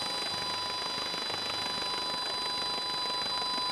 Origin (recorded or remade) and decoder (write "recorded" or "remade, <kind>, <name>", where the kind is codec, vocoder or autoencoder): recorded